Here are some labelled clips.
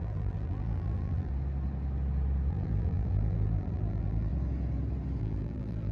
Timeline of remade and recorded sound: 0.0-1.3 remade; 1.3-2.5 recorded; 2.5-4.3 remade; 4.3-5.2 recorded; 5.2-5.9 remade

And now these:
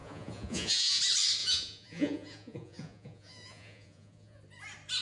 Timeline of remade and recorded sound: 0.0-1.0 remade; 1.0-1.4 recorded; 1.4-4.4 remade; 4.4-5.0 recorded

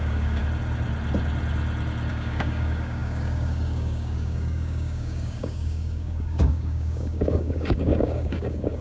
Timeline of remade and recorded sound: 0.0-0.4 remade; 0.4-2.1 recorded; 2.1-8.8 remade

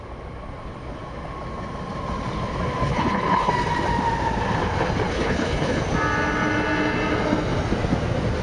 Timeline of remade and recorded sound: 0.0-2.9 recorded; 2.9-3.5 remade; 3.5-5.1 recorded; 5.1-5.8 remade; 5.8-8.4 recorded

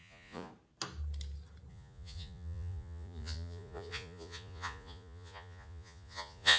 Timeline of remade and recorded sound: 0.0-0.5 remade; 0.5-1.7 recorded; 1.7-6.6 remade